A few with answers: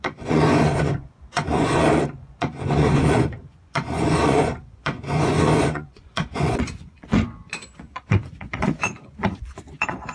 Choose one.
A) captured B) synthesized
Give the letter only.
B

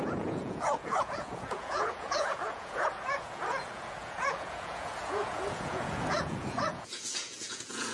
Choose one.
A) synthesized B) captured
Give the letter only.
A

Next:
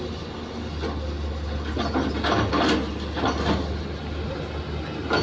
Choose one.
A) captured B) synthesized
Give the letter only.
A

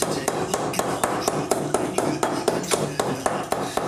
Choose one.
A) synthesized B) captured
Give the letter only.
B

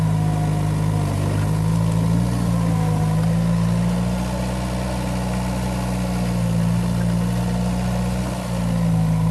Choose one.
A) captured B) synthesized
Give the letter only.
A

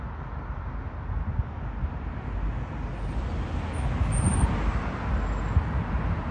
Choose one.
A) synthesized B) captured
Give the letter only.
B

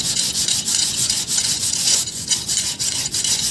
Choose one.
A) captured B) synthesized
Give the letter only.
B